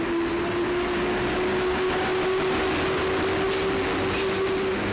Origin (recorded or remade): recorded